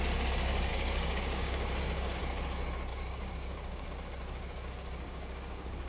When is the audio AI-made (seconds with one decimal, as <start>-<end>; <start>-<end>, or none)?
0.7-2.2; 2.9-5.9